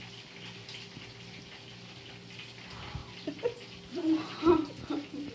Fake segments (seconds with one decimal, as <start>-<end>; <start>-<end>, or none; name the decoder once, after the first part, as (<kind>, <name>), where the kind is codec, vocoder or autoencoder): none